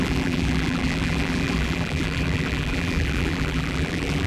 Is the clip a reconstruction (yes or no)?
yes